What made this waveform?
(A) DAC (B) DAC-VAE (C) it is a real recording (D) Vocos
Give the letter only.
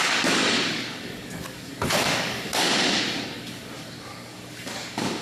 A